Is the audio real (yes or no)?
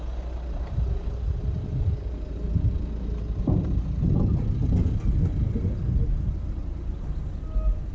yes